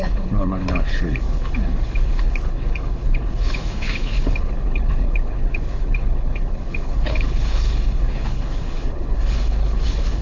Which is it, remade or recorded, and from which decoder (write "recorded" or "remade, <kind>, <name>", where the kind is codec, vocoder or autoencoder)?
remade, codec, HILCodec